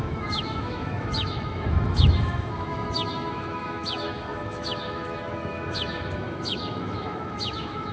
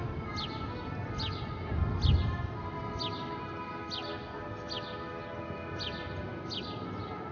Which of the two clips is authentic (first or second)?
second